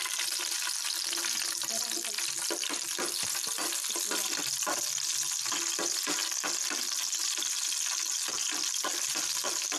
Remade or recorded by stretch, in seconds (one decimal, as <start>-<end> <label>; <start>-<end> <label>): 0.0-9.8 recorded